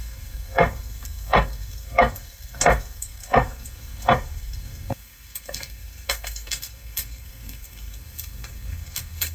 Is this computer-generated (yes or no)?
yes